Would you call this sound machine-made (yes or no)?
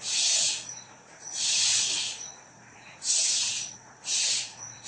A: yes